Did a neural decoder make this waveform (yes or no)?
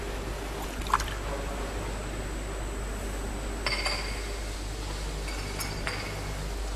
no